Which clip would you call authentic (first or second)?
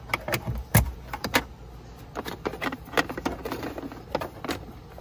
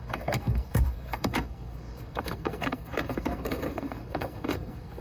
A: first